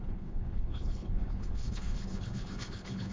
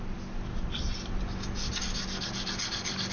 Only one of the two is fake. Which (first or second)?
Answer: first